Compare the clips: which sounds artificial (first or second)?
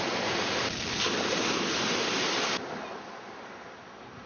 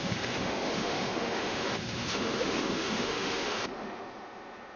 second